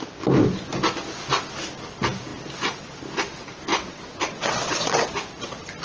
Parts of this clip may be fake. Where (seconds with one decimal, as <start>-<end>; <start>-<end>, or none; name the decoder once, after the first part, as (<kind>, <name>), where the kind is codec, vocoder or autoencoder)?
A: 3.7-5.1 (vocoder, WaveNeXt)